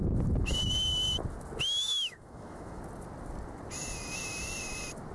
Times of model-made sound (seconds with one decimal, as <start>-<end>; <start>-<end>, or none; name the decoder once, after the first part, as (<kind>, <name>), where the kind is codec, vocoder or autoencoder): 1.8-2.8 (autoencoder, DAC-VAE)